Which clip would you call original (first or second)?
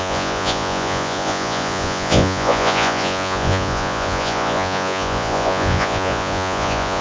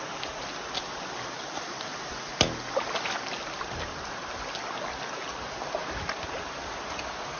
second